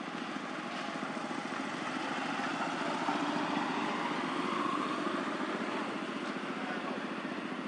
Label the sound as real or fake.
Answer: real